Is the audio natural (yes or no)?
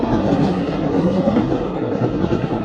no